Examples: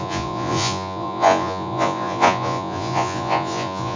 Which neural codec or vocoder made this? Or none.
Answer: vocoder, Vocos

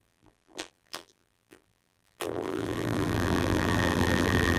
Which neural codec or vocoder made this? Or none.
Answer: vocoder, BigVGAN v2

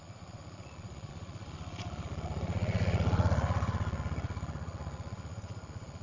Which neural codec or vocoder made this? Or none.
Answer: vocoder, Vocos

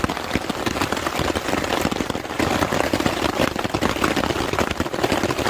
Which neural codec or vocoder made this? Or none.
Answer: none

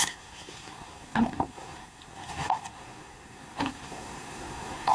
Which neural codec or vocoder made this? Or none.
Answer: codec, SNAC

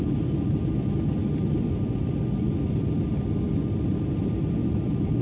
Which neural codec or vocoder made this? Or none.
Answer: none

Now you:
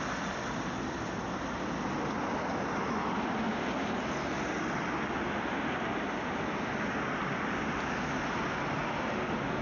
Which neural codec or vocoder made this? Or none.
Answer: none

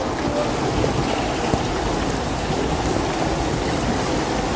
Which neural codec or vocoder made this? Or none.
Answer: none